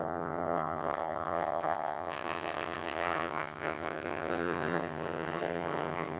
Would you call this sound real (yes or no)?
no